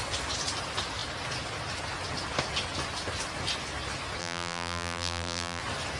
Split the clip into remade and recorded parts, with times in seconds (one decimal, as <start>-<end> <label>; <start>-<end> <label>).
0.0-4.2 recorded; 4.2-5.6 remade; 5.6-6.0 recorded